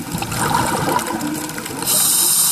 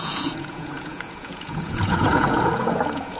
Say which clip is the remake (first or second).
second